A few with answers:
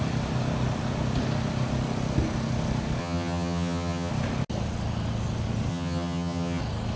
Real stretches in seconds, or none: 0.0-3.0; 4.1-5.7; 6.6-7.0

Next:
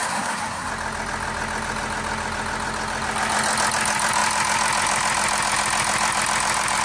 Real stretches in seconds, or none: 0.7-6.8

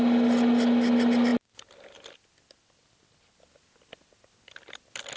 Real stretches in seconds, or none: 0.0-5.2

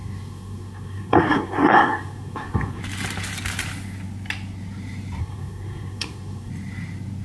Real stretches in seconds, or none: 2.8-5.2; 6.5-7.2

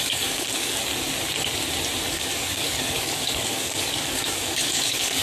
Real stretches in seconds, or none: 0.9-2.1

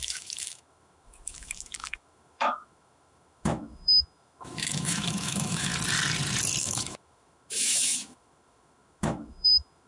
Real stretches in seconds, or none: 5.7-6.6

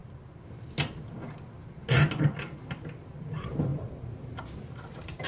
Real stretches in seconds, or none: 0.0-3.2